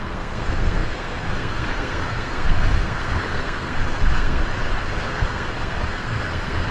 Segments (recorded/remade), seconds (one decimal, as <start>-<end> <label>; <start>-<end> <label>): 0.0-4.4 remade; 4.4-4.9 recorded; 4.9-6.7 remade